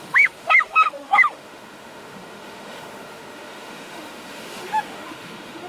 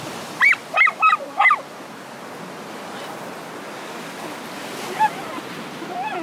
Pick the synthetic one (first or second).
first